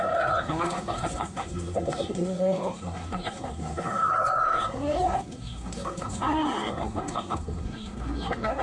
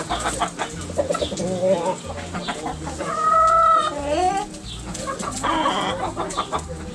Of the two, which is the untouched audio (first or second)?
second